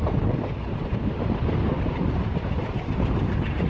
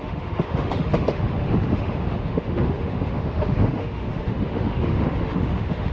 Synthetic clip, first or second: second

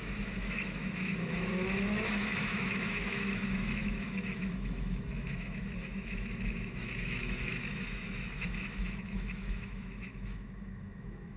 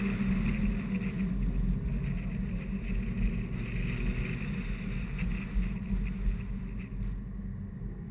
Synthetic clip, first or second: first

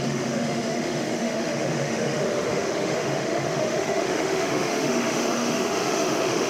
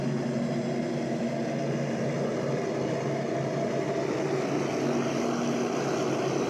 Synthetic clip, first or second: first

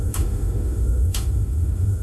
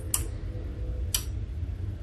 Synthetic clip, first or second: first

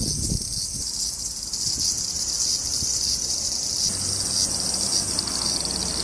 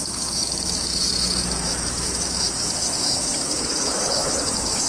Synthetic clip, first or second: second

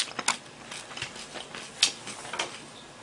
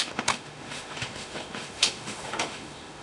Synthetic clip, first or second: second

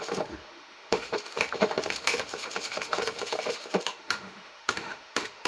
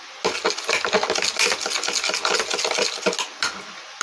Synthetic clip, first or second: first